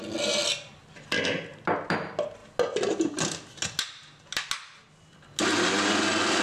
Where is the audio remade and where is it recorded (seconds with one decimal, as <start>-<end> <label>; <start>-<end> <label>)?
0.0-6.4 recorded